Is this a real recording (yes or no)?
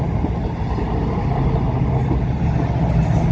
yes